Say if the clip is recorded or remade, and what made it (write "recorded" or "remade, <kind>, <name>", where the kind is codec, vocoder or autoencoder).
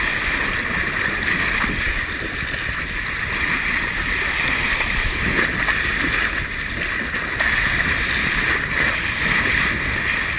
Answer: recorded